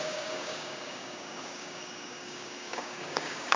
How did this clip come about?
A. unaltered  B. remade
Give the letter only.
B